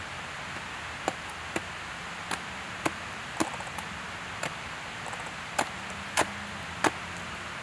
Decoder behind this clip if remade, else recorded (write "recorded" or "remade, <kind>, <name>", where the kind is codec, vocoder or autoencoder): recorded